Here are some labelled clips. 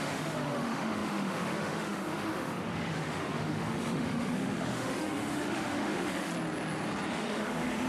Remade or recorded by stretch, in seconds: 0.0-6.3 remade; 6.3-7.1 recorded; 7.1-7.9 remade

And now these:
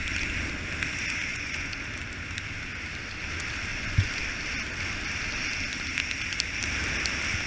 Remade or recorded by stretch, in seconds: 0.0-1.3 recorded; 1.3-1.8 remade; 1.8-3.7 recorded; 3.7-4.2 remade; 4.2-7.5 recorded